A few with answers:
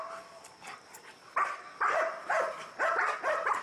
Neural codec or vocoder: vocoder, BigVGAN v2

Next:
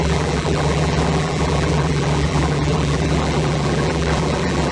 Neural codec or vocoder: vocoder, BigVGAN v2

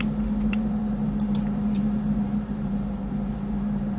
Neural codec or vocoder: vocoder, BigVGAN v2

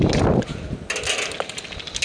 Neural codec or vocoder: none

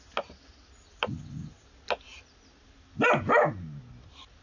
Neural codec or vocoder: none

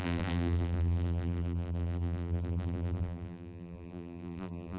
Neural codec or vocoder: vocoder, BigVGAN v2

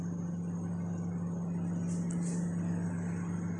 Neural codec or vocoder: none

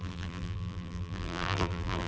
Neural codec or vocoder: vocoder, BigVGAN v2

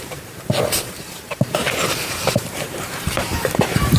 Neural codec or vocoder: vocoder, BigVGAN v2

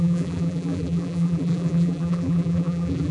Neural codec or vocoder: vocoder, BigVGAN v2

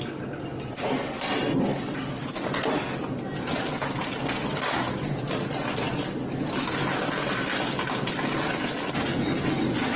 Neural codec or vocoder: none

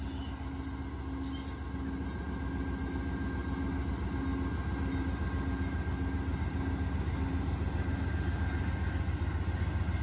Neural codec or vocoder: none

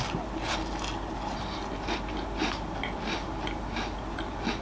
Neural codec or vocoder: none